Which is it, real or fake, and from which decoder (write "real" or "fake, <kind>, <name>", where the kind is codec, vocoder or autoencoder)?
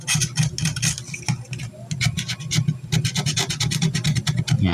real